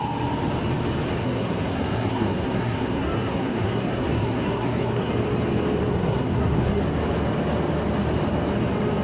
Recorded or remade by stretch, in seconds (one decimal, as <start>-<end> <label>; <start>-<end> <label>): 0.0-1.2 recorded; 1.2-5.1 remade; 5.1-5.9 recorded; 5.9-6.8 remade; 6.8-9.0 recorded